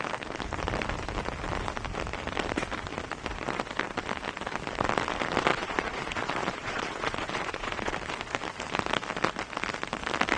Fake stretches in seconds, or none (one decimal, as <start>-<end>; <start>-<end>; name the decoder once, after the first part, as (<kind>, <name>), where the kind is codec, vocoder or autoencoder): 5.5-7.9 (vocoder, Vocos)